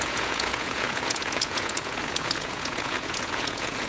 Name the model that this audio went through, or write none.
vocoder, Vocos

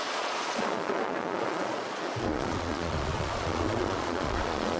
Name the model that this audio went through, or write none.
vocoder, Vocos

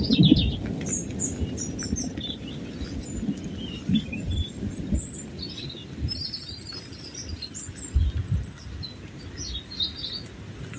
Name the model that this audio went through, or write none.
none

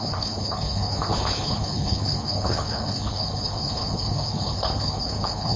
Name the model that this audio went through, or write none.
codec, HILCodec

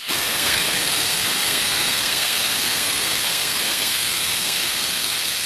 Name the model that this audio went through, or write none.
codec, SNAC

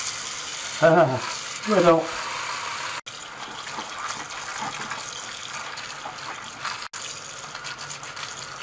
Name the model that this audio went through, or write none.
none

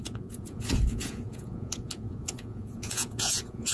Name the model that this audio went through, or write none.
vocoder, Vocos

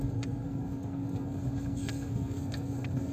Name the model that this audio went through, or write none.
codec, SNAC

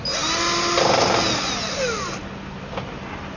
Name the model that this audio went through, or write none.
none